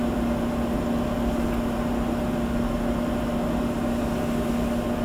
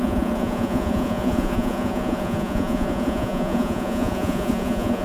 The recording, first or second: first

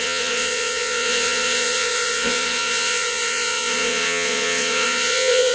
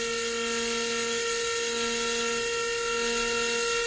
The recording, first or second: second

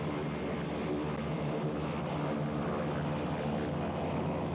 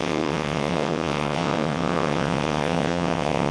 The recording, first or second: first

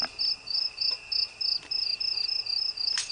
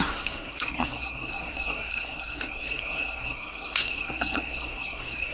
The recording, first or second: first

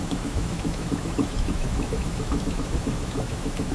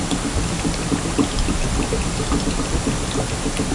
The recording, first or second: second